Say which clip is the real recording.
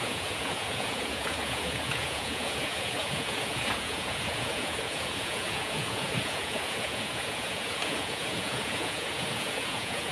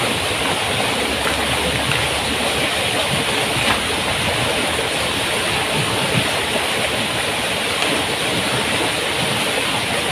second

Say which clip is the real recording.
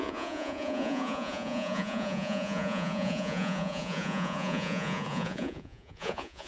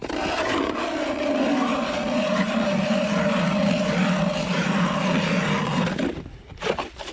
second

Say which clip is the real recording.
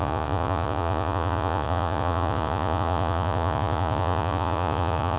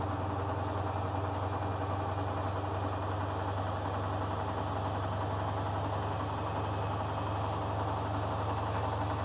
second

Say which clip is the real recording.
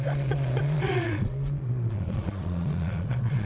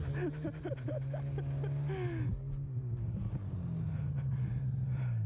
second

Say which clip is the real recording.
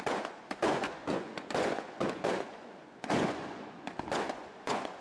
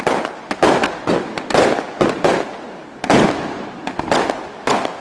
second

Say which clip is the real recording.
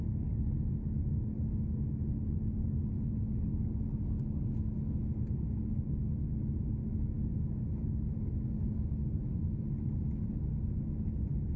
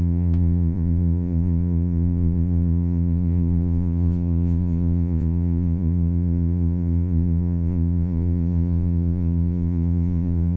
first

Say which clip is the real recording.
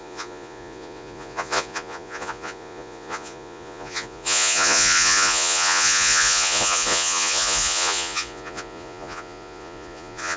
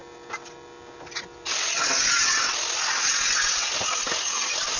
second